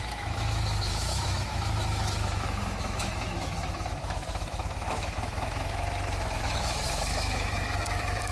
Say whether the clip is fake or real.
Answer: fake